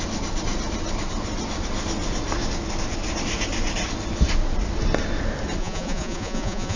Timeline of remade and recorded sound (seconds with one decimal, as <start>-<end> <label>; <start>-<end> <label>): 0.0-5.6 recorded; 5.6-6.8 remade